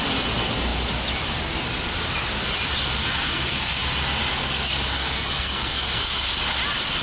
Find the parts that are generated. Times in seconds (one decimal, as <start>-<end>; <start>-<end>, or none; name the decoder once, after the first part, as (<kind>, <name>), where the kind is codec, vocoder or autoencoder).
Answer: 3.0-3.8 (codec, SNAC); 4.4-6.3